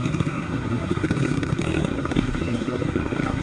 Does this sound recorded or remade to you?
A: remade